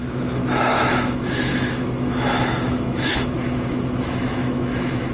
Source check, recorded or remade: remade